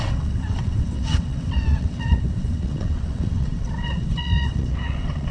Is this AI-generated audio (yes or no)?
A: yes